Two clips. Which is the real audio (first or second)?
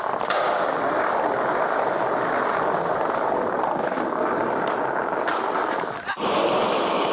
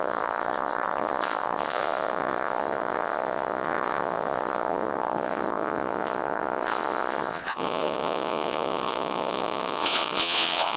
first